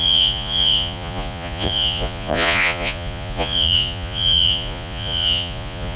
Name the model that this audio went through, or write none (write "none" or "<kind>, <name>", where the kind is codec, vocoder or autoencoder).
vocoder, Vocos